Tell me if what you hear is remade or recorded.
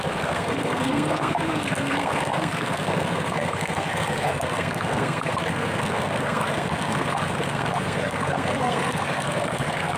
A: remade